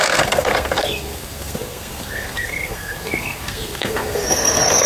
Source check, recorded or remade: remade